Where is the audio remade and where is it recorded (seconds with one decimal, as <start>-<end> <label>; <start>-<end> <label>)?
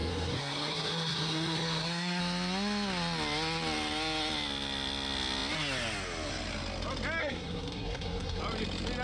0.0-2.2 remade; 2.2-7.2 recorded; 7.2-8.4 remade; 8.4-9.0 recorded